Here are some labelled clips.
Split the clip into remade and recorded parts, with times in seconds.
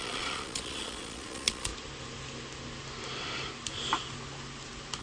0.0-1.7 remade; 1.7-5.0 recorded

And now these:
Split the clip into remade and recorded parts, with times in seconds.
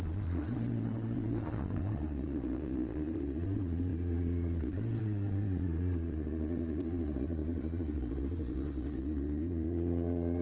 0.0-10.4 remade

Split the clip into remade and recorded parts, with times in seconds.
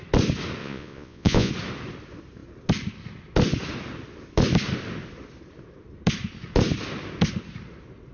0.0-0.6 recorded; 0.6-1.5 remade; 1.5-8.1 recorded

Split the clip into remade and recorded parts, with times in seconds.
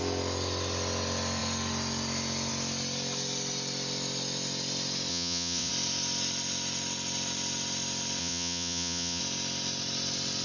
0.0-5.1 recorded; 5.1-5.7 remade; 5.7-8.2 recorded; 8.2-9.2 remade; 9.2-10.4 recorded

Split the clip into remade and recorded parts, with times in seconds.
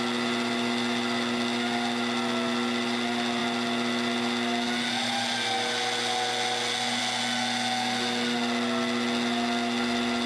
0.0-10.3 recorded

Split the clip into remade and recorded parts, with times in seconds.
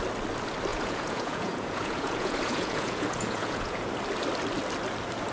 0.0-0.7 recorded; 0.7-3.9 remade; 3.9-5.3 recorded